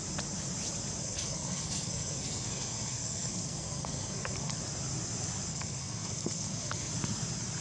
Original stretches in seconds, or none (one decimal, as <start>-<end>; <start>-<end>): 0.0-1.0; 4.6-5.5; 6.9-7.6